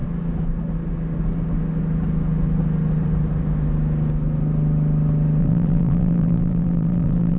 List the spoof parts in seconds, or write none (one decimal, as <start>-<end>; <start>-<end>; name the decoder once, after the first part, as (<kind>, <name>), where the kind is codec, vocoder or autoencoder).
5.4-7.4 (vocoder, BigVGAN v2)